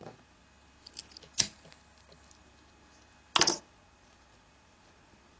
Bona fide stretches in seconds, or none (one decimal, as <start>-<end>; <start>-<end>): 0.4-3.5